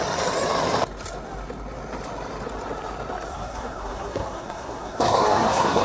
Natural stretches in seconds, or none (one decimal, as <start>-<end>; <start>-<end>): 0.0-3.3